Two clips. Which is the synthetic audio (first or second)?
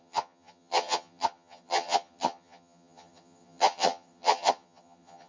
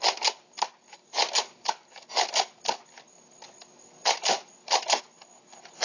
first